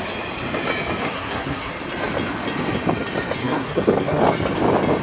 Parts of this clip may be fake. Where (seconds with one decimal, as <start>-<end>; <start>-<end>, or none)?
1.0-1.7; 3.4-4.2